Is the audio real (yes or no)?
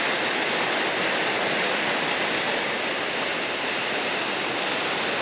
yes